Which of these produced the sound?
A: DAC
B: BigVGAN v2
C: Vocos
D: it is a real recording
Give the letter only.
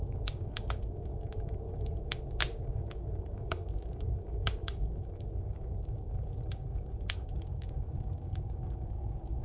A